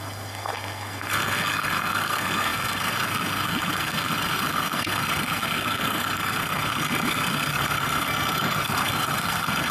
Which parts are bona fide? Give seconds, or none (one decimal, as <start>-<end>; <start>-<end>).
none